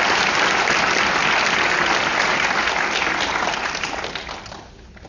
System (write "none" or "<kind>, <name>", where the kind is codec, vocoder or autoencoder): none